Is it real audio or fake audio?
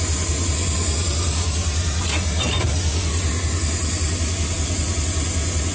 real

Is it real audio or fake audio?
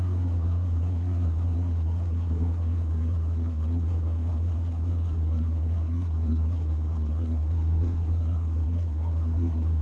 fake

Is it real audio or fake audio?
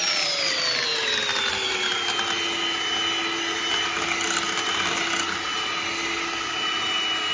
real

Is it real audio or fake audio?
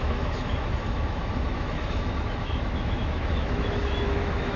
fake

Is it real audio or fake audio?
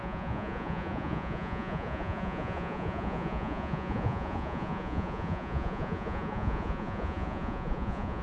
fake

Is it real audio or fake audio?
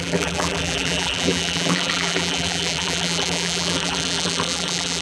fake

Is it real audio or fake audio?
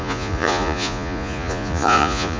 fake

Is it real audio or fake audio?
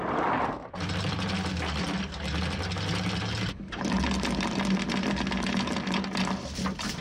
real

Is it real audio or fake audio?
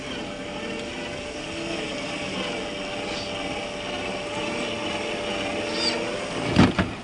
real